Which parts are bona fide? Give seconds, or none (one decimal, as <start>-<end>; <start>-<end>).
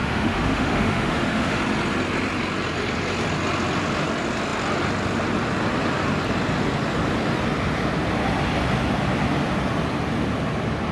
1.6-10.9